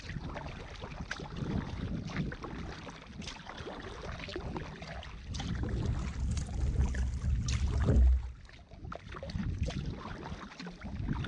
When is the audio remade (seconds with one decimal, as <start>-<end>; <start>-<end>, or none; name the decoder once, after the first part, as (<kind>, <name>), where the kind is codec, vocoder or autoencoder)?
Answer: none